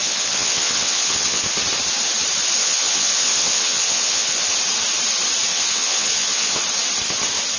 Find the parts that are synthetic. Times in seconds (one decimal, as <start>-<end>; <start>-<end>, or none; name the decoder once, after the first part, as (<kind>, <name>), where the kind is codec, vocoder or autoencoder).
0.0-1.4 (vocoder, WaveNeXt); 2.6-4.4; 5.5-6.6